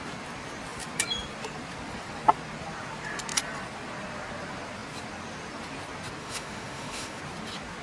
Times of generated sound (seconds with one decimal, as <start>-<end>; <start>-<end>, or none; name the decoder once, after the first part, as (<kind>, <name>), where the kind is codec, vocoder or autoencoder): 6.2-7.2 (autoencoder, DAC-VAE)